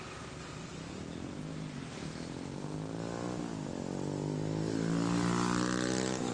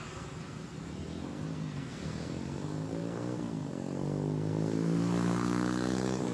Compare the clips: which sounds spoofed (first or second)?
second